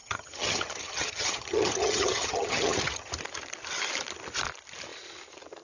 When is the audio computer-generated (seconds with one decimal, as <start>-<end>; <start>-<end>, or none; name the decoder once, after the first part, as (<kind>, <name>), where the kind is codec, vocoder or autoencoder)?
0.0-3.1 (vocoder, HiFi-GAN)

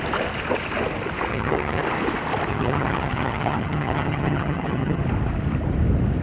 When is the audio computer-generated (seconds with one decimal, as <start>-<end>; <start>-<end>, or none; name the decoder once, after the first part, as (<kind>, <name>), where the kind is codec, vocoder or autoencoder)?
1.3-1.8 (vocoder, HiFi-GAN); 2.5-5.0